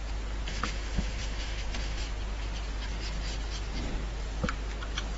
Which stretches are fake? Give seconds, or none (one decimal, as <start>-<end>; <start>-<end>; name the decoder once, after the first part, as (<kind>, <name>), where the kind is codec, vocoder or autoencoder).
0.5-2.0 (autoencoder, DAC-VAE)